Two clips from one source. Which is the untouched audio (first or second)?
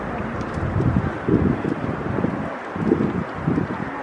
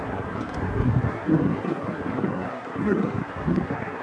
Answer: first